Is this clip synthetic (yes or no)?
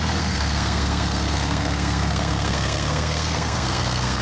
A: yes